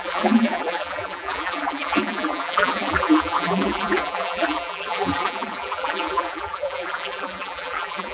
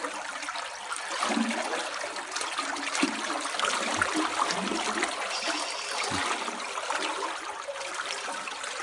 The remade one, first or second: first